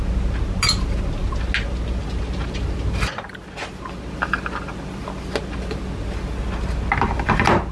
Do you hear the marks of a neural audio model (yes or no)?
no